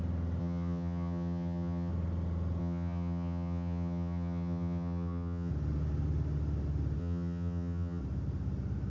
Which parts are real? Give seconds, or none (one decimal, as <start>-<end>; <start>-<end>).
0.0-0.4; 1.9-2.6; 5.5-7.0; 8.0-8.9